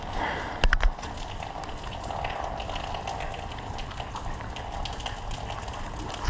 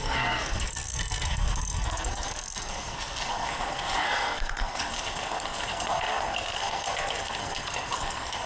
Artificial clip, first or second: second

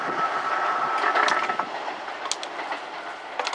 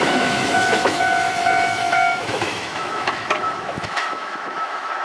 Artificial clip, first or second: second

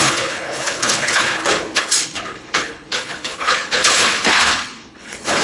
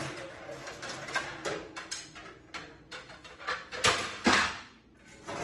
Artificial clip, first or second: first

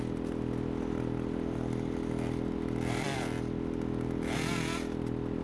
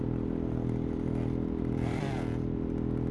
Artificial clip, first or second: second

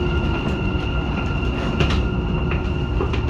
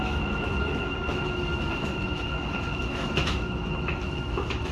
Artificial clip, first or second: second